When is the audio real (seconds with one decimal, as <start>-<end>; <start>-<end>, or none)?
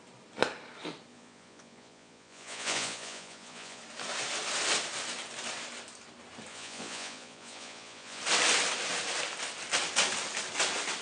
0.0-1.1; 3.8-6.5; 8.2-11.0